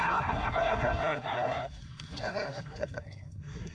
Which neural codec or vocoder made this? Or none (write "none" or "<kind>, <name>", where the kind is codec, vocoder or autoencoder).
codec, SNAC